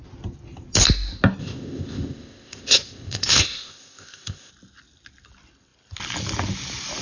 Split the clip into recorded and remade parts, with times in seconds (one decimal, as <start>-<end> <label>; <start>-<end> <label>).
0.0-1.4 recorded; 1.4-4.5 remade; 4.5-7.0 recorded